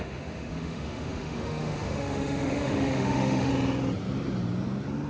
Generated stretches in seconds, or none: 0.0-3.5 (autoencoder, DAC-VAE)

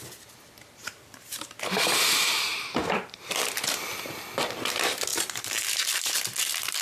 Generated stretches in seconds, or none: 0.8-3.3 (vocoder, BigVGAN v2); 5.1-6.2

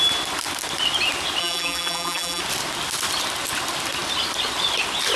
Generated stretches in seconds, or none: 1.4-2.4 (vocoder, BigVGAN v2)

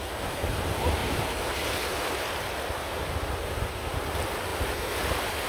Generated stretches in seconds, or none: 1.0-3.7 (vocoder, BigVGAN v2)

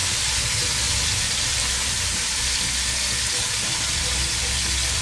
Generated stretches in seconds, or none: 0.0-2.4 (vocoder, BigVGAN v2); 3.4-4.6

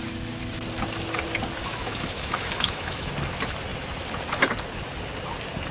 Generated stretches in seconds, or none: 1.6-3.1 (autoencoder, DAC-VAE)